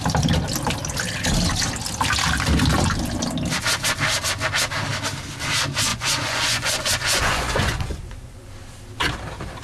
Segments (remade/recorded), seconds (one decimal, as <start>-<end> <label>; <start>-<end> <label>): 0.0-5.9 recorded; 5.9-8.5 remade; 8.5-9.6 recorded

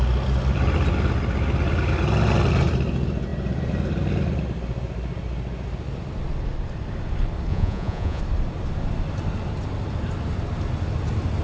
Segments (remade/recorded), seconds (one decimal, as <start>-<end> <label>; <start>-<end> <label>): 0.0-7.5 recorded; 7.5-8.2 remade; 8.2-11.4 recorded

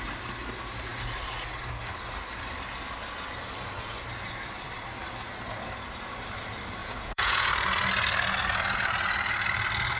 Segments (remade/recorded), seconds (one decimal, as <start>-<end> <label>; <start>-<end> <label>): 0.0-6.8 recorded; 6.8-7.5 remade; 7.5-10.0 recorded

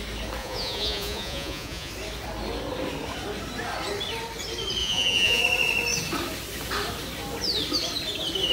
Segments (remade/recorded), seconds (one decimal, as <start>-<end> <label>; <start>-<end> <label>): 0.0-0.4 recorded; 0.4-1.9 remade; 1.9-4.8 recorded; 4.8-5.4 remade; 5.4-8.5 recorded

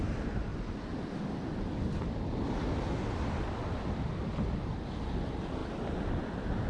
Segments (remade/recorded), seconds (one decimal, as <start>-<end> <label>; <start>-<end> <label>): 0.0-6.7 recorded